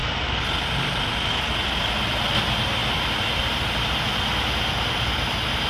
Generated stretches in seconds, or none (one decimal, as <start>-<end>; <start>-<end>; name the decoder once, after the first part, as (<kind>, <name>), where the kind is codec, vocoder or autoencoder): none